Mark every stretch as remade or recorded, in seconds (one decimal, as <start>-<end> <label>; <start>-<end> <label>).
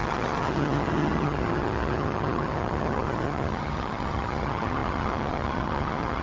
0.0-6.2 remade